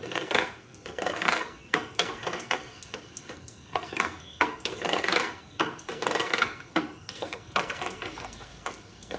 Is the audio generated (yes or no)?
yes